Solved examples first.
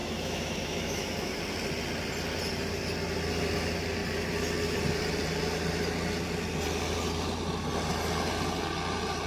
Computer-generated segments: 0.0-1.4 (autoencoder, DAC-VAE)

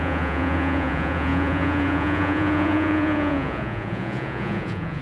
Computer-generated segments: 0.0-5.0 (vocoder, Vocos)

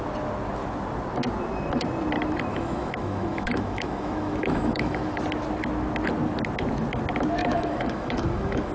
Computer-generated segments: 2.5-5.2 (autoencoder, DAC-VAE); 7.4-8.7